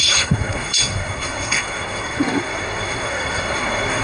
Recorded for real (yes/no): no